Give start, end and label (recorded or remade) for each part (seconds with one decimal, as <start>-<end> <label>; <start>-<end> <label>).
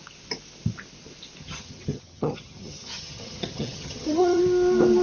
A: 0.0-1.4 recorded; 1.4-4.4 remade; 4.4-5.0 recorded